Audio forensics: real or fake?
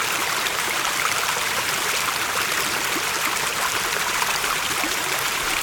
fake